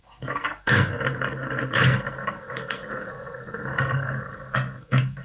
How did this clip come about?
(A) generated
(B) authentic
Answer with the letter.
A